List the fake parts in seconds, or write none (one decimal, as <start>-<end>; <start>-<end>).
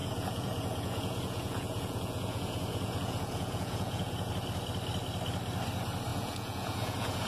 0.0-4.3; 6.1-7.3